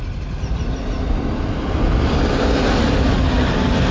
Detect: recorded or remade recorded